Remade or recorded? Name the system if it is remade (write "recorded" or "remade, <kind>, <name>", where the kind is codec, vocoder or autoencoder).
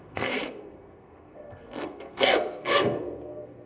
remade, codec, SNAC